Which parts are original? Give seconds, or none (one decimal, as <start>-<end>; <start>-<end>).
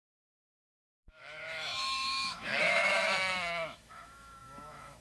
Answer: none